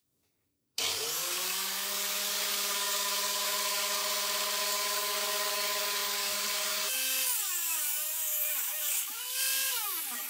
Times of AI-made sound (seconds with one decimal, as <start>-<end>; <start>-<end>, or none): 0.0-4.0; 4.6-10.3